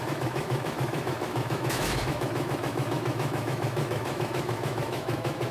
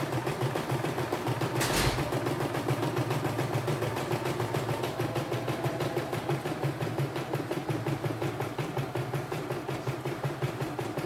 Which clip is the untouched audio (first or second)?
second